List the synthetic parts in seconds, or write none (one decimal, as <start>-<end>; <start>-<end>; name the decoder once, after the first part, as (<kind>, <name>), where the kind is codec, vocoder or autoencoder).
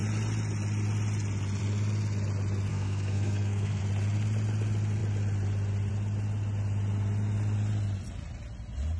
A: 2.7-3.8 (codec, SNAC)